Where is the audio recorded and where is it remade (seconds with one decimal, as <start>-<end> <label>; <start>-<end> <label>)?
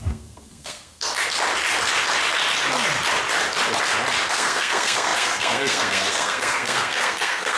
0.0-1.1 remade; 1.1-4.3 recorded; 4.3-7.6 remade